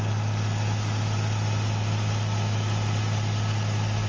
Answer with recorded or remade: recorded